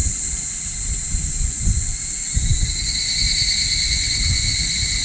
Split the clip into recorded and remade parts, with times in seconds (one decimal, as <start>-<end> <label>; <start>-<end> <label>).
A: 0.0-1.3 recorded; 1.3-1.9 remade; 1.9-3.9 recorded; 3.9-5.0 remade